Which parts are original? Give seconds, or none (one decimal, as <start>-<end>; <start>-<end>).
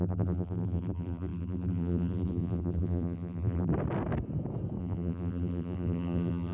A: 3.7-4.8